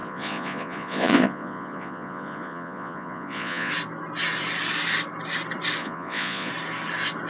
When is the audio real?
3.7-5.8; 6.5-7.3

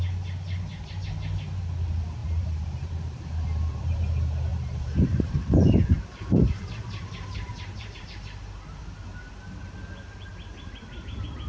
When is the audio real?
0.0-2.2; 3.8-4.5; 9.3-10.3

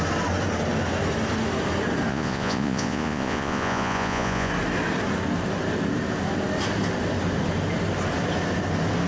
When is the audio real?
0.0-2.1; 4.5-9.1

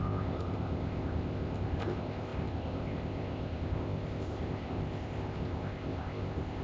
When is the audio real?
none